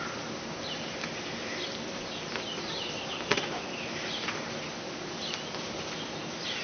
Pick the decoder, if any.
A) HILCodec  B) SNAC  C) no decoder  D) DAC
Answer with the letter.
C